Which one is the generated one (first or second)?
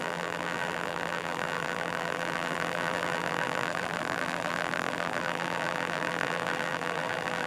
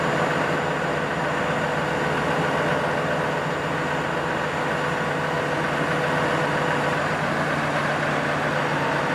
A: first